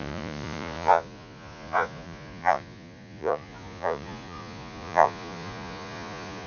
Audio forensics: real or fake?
fake